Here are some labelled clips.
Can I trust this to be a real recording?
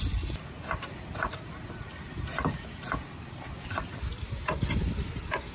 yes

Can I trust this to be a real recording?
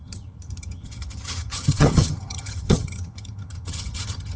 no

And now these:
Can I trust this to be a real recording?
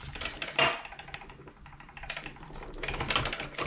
yes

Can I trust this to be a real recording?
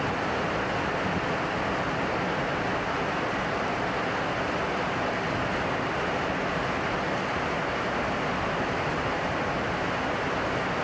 yes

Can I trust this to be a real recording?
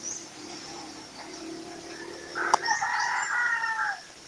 yes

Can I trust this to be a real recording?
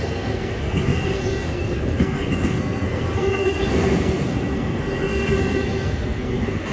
no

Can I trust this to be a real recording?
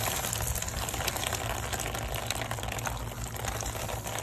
yes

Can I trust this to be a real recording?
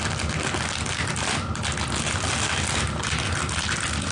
yes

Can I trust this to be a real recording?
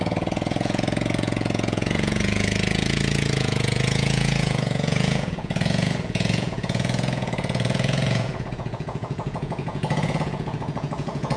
no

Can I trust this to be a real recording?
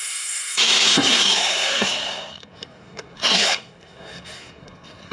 no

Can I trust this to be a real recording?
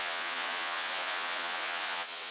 no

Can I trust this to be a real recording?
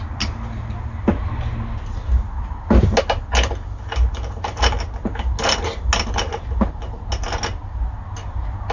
yes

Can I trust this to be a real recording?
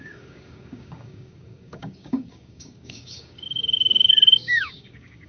no